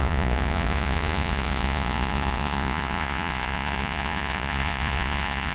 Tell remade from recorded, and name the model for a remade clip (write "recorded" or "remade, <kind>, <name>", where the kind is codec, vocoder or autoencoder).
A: remade, vocoder, Vocos